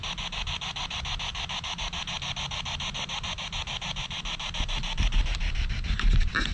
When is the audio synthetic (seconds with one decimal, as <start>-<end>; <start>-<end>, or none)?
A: none